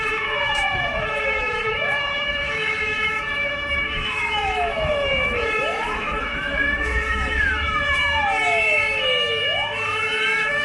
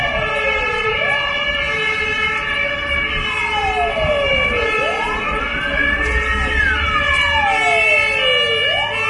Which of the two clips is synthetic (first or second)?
first